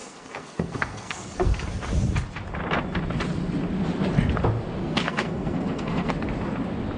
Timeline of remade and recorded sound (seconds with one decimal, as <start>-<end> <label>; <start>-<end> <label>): 0.0-1.7 remade; 1.7-4.8 recorded; 4.8-6.1 remade; 6.1-7.0 recorded